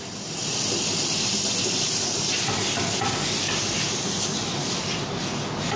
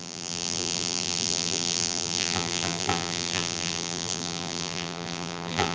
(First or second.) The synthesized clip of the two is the second